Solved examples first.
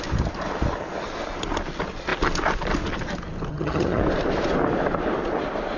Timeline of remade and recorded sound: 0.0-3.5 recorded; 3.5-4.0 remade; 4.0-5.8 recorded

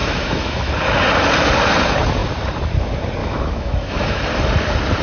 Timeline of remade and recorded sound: 0.0-0.7 remade; 0.7-3.2 recorded; 3.2-4.2 remade; 4.2-5.0 recorded